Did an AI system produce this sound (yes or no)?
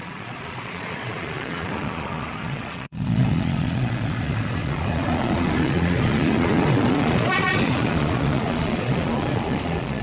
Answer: yes